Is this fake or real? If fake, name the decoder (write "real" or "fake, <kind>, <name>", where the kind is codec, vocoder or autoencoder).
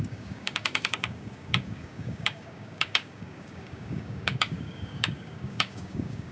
fake, codec, DAC